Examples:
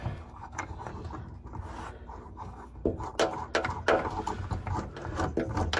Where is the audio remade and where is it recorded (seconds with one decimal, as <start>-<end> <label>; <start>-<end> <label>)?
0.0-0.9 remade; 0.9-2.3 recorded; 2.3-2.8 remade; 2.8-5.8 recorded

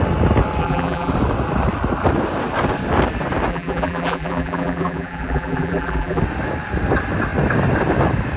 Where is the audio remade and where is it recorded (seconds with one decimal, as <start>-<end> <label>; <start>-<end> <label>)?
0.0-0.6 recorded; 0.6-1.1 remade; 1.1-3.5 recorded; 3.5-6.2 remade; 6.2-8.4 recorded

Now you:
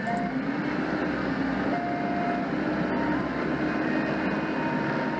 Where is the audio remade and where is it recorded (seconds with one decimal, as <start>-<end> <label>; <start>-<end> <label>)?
0.0-5.2 recorded